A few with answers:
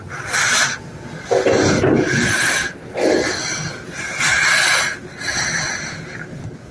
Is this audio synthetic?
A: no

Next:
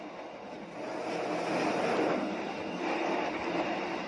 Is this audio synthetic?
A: no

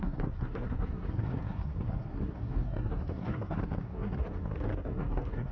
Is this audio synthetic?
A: yes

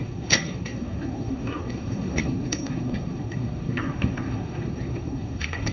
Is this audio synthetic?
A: yes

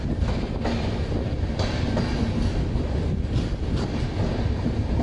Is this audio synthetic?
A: no